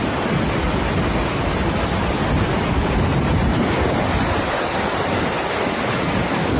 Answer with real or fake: real